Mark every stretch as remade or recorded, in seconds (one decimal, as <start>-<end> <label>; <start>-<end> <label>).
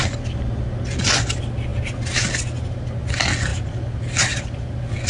0.0-5.1 recorded